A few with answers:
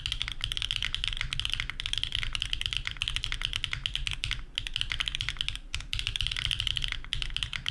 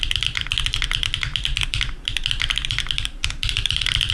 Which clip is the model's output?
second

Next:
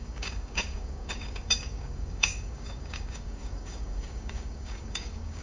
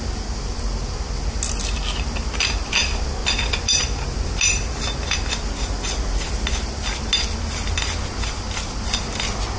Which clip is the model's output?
first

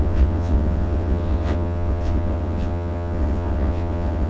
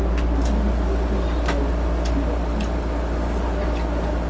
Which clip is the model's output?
first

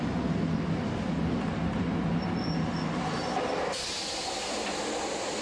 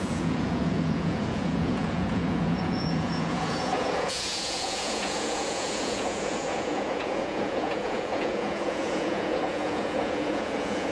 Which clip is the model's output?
second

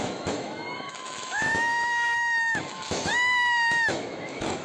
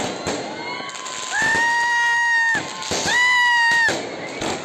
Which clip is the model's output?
first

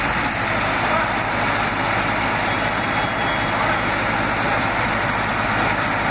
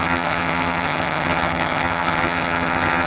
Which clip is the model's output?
second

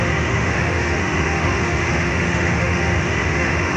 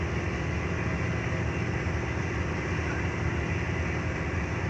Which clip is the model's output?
first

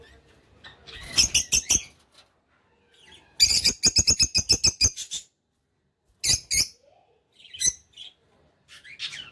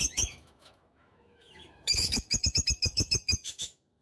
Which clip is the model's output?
second